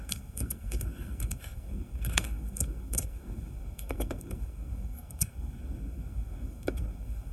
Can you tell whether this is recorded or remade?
remade